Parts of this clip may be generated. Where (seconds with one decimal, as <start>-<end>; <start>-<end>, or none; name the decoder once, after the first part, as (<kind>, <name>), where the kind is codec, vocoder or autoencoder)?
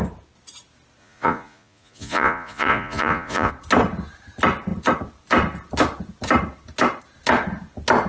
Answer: 1.0-3.5 (vocoder, Vocos)